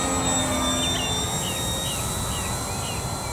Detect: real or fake real